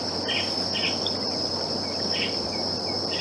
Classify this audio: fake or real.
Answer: real